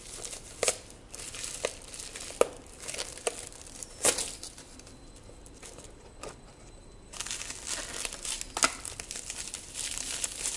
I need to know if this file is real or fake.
real